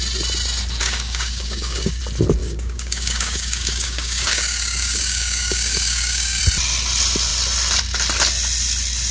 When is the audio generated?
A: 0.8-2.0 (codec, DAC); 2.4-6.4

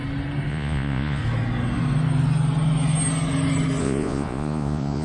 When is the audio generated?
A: 0.5-1.2 (vocoder, Vocos); 3.8-5.0